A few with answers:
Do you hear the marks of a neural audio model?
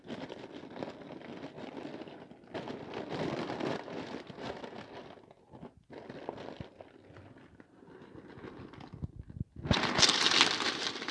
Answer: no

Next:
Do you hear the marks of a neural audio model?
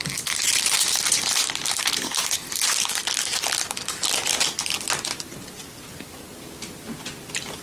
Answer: no